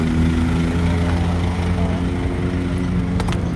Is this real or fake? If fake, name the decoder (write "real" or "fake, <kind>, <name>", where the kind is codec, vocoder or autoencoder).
real